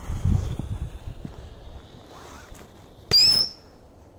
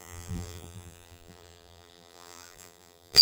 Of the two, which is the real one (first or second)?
first